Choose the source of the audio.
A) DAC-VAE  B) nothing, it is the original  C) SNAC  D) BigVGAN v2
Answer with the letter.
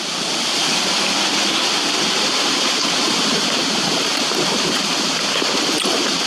B